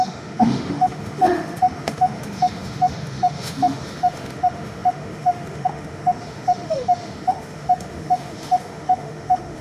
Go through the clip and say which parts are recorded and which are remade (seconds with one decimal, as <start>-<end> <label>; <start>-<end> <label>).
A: 0.0-9.6 remade